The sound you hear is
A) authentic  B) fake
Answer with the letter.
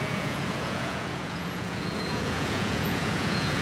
B